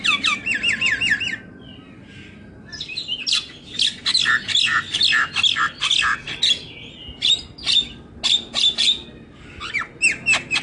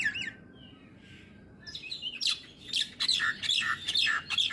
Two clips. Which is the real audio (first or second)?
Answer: first